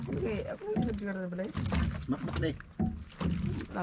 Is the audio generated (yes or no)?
no